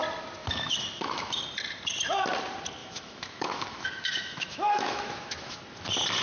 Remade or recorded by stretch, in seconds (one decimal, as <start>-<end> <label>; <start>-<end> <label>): 0.0-0.4 recorded; 0.4-1.4 remade; 1.4-2.8 recorded; 2.8-5.6 remade; 5.6-6.2 recorded